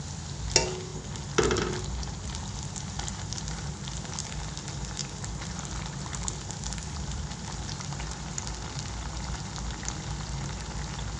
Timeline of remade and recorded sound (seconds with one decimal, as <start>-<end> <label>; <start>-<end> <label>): 0.0-11.2 recorded